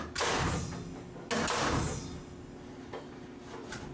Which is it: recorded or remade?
recorded